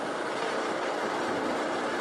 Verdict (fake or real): real